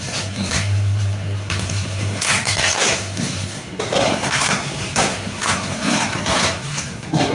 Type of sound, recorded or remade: remade